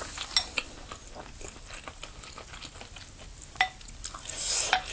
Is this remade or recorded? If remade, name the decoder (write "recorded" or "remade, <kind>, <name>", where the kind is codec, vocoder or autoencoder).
recorded